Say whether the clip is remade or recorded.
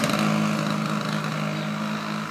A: recorded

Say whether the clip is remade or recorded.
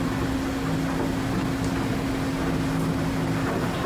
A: recorded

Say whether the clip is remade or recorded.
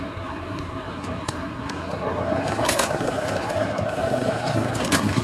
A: remade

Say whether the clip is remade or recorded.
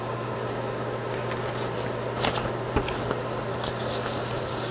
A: recorded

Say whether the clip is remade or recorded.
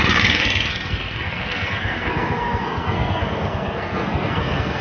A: remade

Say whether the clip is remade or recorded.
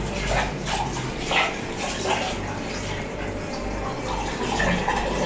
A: recorded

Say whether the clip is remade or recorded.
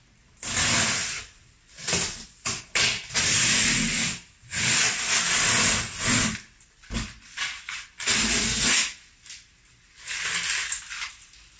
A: recorded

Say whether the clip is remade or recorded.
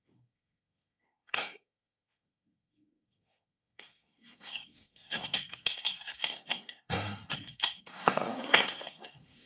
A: remade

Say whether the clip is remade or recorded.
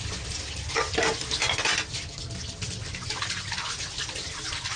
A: recorded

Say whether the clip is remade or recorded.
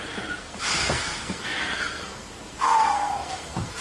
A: remade